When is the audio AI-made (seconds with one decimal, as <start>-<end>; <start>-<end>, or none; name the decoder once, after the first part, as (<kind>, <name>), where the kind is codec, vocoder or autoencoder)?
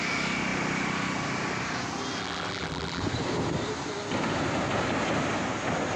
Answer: 2.2-3.0 (vocoder, BigVGAN v2)